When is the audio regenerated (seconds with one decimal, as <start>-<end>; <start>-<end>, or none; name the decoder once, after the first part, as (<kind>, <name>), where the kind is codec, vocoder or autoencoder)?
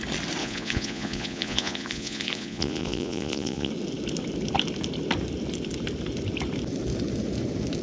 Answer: 0.4-3.7 (vocoder, Vocos)